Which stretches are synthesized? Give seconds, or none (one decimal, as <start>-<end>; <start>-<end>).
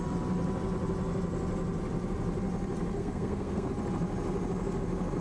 3.0-3.7